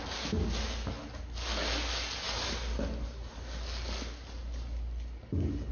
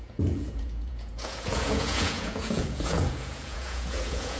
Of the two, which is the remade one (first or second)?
second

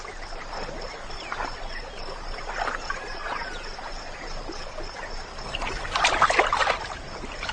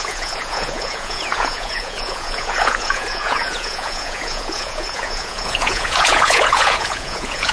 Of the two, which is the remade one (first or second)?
second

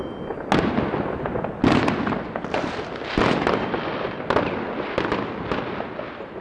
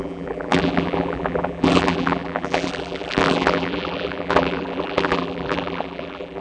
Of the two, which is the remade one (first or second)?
second